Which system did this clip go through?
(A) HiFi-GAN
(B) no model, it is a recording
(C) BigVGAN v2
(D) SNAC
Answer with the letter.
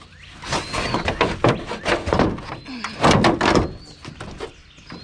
B